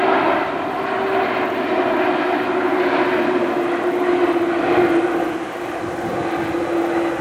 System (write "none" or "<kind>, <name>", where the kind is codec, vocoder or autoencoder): none